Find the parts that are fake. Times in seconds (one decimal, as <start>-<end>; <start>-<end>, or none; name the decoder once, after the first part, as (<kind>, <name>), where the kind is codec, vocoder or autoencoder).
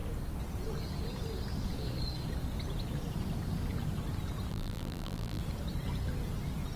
4.5-5.4 (vocoder, BigVGAN v2)